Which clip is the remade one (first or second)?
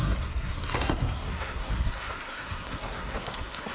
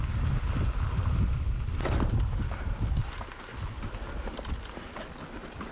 first